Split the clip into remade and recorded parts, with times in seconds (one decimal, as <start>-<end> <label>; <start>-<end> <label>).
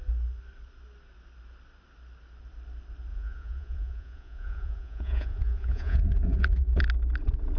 0.0-3.1 recorded; 3.1-6.8 remade; 6.8-7.6 recorded